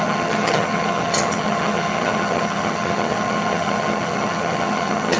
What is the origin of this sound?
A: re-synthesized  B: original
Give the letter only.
A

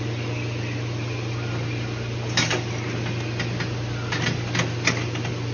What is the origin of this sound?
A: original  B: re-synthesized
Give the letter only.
A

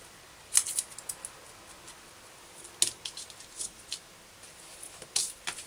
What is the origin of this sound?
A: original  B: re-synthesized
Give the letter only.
A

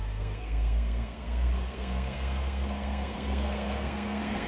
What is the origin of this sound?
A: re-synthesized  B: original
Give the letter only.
A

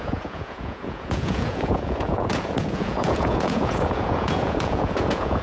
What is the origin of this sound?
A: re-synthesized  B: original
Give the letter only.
A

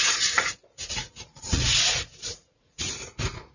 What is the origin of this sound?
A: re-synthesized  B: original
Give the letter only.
A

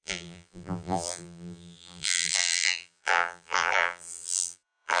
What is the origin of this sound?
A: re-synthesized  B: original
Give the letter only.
A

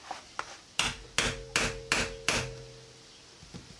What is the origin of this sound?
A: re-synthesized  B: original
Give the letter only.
B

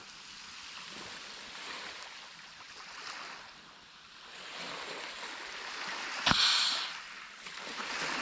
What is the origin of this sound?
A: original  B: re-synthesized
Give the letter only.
A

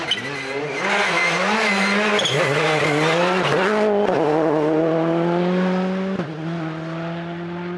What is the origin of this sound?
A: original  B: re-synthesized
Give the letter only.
A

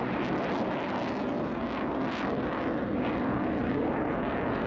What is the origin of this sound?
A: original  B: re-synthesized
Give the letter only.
A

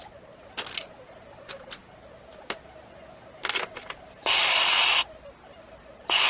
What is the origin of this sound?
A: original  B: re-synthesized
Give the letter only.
A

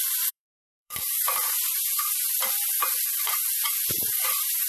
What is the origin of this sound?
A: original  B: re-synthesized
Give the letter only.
B